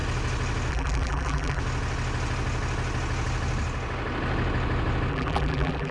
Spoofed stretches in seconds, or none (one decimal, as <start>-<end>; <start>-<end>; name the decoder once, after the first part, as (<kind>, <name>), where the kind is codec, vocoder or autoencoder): 0.7-1.6 (vocoder, BigVGAN v2); 5.1-5.9